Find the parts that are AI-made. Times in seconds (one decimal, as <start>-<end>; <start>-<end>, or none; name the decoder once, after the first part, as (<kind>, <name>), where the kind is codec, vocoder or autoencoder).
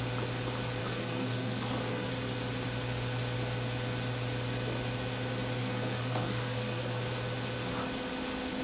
0.8-2.1 (codec, SNAC); 5.6-7.0